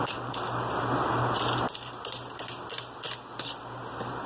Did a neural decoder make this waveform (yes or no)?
no